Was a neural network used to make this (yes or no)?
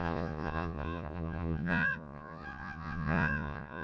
yes